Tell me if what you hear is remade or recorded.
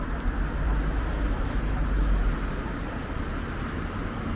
recorded